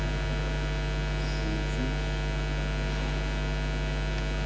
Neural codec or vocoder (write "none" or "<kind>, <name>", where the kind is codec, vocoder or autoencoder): none